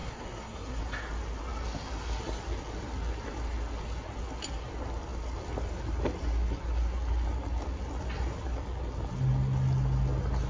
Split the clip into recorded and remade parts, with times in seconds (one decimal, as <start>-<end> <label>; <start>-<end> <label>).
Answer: 0.0-0.8 remade; 0.8-10.5 recorded